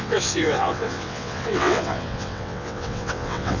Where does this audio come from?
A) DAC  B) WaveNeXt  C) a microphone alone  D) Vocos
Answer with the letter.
B